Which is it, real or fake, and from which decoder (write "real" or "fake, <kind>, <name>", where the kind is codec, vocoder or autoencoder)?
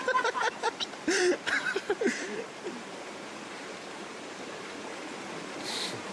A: fake, vocoder, BigVGAN v2